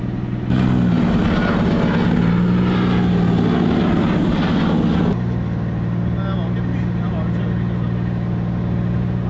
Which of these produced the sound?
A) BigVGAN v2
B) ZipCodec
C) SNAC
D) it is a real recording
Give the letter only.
D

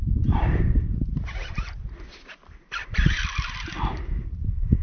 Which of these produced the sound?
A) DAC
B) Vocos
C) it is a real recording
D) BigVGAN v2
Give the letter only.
D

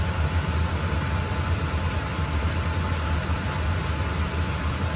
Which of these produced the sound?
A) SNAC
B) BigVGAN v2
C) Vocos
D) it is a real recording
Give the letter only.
D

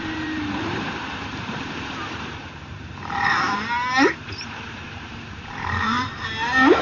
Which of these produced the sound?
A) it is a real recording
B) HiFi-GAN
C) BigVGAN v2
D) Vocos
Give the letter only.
C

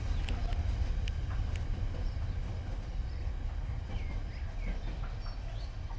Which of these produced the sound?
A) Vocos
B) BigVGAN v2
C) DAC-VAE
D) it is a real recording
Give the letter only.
D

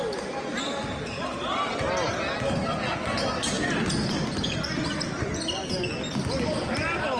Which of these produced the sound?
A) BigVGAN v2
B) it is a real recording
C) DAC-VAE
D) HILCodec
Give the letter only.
B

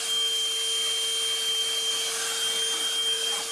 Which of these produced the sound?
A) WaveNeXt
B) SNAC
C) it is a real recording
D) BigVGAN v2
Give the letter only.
C